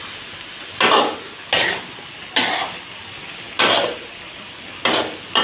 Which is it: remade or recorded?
recorded